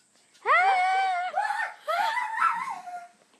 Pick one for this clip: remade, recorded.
recorded